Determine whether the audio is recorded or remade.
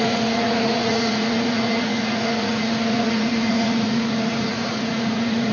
remade